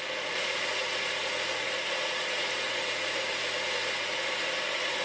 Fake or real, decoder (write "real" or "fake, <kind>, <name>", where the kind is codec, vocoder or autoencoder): fake, vocoder, Vocos